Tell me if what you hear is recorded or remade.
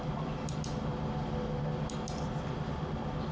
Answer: recorded